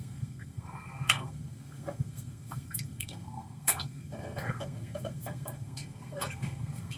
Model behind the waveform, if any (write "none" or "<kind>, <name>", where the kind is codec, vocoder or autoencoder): codec, SNAC